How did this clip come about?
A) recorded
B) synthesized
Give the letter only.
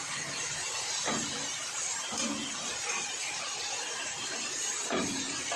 B